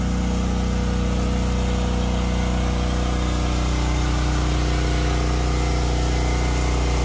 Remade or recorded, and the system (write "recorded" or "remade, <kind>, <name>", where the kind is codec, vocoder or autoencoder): recorded